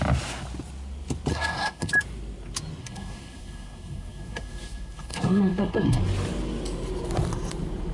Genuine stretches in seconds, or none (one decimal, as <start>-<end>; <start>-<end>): 0.0-1.3; 1.9-2.8; 6.0-7.9